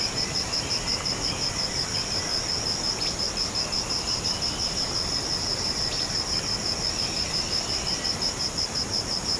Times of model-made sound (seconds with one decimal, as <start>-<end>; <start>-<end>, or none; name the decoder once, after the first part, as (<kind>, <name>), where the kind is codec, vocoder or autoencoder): none